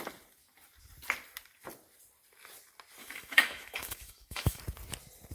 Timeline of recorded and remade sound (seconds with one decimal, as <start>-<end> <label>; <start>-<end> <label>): 0.0-3.0 recorded; 3.0-4.6 remade; 4.6-5.3 recorded

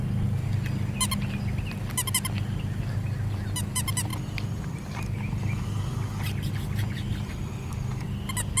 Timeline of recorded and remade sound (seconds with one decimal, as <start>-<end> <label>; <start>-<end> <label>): 0.0-8.6 recorded

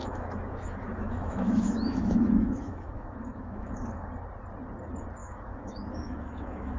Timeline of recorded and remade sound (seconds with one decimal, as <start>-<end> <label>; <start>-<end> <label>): 0.0-4.1 remade; 4.1-5.2 recorded; 5.2-6.8 remade

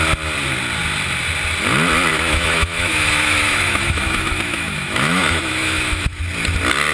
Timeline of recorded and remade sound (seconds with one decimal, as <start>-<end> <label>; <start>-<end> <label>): 0.0-2.1 recorded; 2.1-6.2 remade; 6.2-6.9 recorded

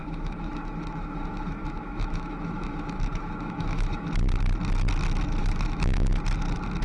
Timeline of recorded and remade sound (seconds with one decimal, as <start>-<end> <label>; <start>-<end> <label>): 0.0-4.1 remade; 4.1-5.4 recorded; 5.4-6.1 remade; 6.1-6.8 recorded